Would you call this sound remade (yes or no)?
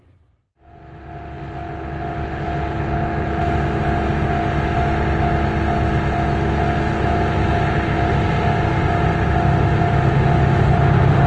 no